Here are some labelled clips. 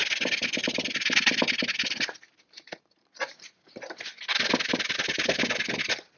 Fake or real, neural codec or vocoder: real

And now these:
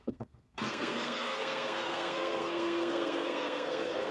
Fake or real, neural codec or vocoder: fake, codec, SNAC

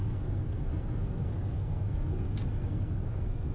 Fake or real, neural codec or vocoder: fake, codec, SNAC